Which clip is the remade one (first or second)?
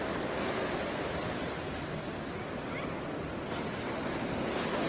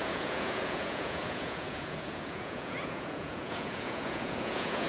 second